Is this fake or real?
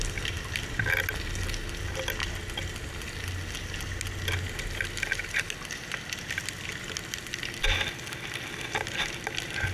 real